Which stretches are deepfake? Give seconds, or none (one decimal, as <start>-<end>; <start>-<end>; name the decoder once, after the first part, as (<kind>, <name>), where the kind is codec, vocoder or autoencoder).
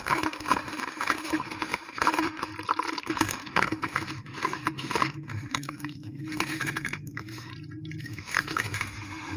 0.0-2.5 (autoencoder, DAC-VAE); 3.0-7.5; 8.0-9.4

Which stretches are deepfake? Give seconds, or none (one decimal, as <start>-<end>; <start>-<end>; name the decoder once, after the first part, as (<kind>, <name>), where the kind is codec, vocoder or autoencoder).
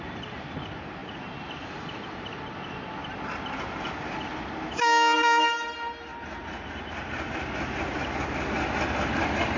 none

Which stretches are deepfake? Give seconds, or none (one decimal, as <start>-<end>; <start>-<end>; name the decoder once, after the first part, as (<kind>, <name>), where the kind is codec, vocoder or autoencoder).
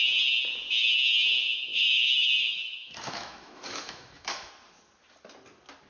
1.7-4.5 (autoencoder, DAC-VAE)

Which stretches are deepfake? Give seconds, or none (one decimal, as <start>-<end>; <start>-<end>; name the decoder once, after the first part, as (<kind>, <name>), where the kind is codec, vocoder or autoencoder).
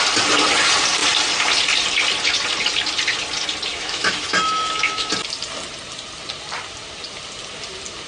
3.7-5.1 (autoencoder, DAC-VAE)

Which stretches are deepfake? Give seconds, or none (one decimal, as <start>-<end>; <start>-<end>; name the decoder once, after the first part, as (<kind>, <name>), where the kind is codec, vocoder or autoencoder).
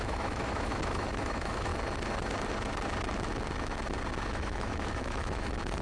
0.0-1.7 (autoencoder, DAC-VAE); 4.3-5.8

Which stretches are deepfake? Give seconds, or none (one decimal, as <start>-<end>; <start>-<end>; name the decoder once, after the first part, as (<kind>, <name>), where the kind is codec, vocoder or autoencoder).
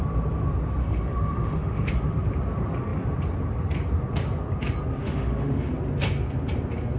0.8-1.9 (autoencoder, DAC-VAE); 5.0-5.7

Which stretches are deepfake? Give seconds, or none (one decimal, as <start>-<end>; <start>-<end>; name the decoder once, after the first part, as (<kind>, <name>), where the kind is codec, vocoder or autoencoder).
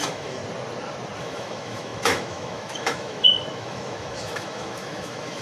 0.0-0.4 (autoencoder, DAC-VAE); 1.2-5.4